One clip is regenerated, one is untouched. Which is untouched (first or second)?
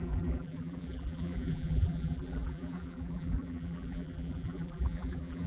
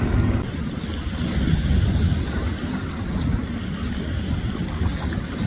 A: second